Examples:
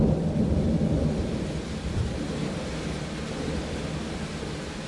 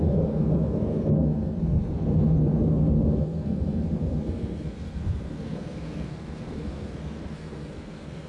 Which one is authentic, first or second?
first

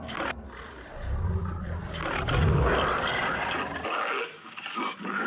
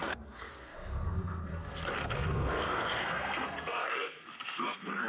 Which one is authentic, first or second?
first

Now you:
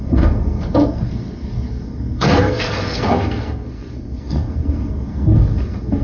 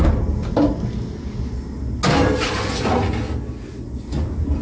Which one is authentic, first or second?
second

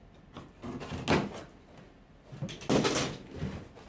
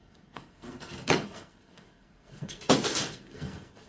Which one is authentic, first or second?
first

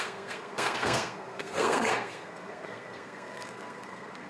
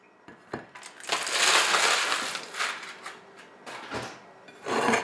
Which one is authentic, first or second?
second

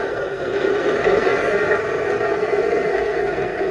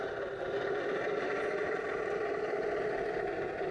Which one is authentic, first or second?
second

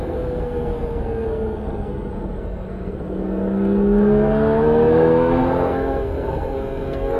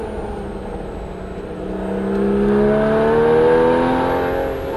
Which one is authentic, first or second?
second